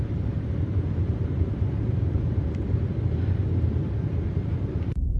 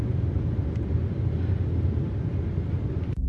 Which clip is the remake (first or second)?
first